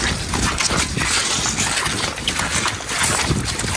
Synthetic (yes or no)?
no